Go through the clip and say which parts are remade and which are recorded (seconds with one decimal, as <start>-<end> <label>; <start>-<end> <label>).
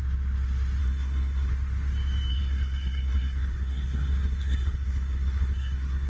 0.0-0.8 recorded; 0.8-1.5 remade; 1.5-2.3 recorded; 2.3-6.1 remade